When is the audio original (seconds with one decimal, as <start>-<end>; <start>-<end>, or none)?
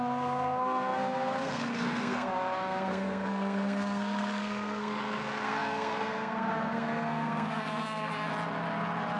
8.3-9.2